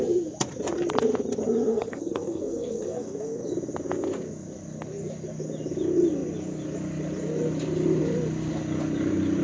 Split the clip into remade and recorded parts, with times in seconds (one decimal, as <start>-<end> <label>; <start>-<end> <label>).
0.0-1.7 recorded; 1.7-3.5 remade; 3.5-9.4 recorded

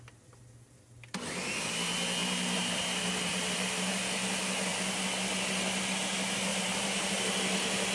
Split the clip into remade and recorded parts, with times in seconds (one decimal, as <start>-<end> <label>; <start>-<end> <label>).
0.0-2.2 recorded; 2.2-3.9 remade; 3.9-6.5 recorded; 6.5-7.2 remade; 7.2-7.9 recorded

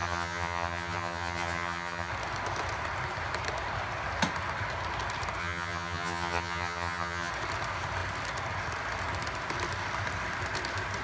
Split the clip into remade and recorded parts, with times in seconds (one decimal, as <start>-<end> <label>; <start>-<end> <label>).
0.0-2.1 remade; 2.1-5.4 recorded; 5.4-7.3 remade; 7.3-11.0 recorded

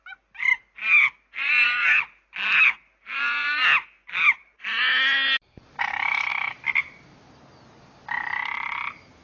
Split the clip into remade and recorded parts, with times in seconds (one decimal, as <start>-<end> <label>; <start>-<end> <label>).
0.0-9.2 recorded

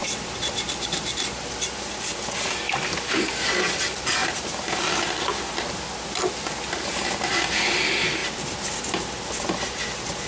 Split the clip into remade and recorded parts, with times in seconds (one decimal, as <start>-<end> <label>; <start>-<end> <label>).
0.0-2.2 remade; 2.2-4.2 recorded; 4.2-5.3 remade; 5.3-8.2 recorded; 8.2-8.7 remade; 8.7-10.3 recorded